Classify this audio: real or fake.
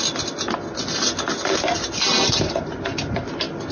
real